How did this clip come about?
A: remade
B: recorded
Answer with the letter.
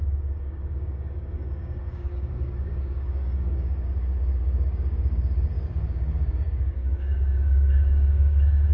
A